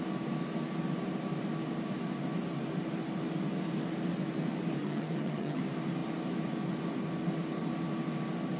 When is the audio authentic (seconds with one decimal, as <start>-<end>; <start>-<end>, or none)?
0.0-4.8; 5.6-8.6